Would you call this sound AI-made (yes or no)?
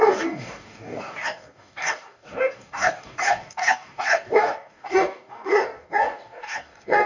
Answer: yes